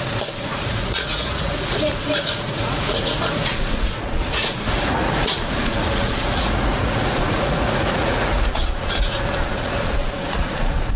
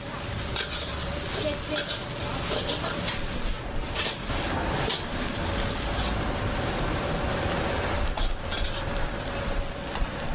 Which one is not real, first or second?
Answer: first